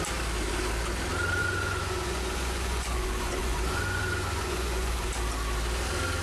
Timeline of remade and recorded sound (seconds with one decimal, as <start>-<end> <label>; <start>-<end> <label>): 0.0-1.4 recorded; 1.4-5.1 remade; 5.1-6.2 recorded